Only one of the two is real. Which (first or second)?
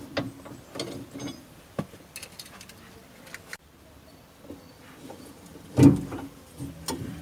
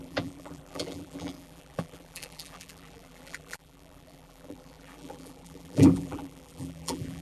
first